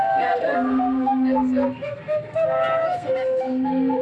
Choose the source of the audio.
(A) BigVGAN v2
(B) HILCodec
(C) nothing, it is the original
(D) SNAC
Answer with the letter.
D